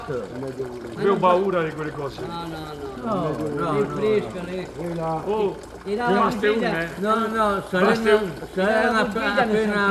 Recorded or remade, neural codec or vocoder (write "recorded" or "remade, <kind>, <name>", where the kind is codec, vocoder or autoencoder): recorded